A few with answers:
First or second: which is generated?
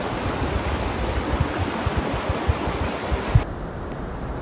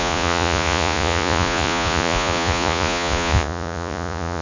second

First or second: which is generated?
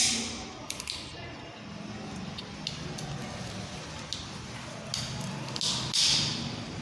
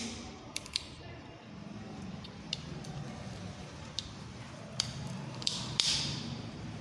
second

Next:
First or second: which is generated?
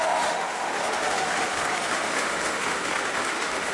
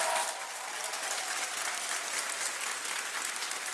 first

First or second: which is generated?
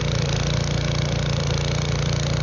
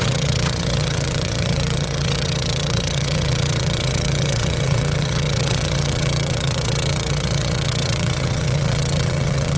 second